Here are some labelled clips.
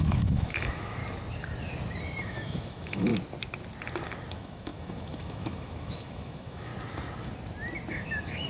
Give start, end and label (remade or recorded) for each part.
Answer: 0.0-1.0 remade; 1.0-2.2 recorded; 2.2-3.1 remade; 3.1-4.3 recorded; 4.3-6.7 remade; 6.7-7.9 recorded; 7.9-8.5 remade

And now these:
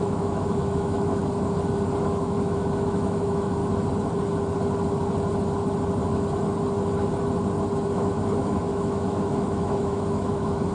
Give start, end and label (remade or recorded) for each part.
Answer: 0.0-1.2 remade; 1.2-2.0 recorded; 2.0-3.6 remade; 3.6-7.9 recorded; 7.9-10.7 remade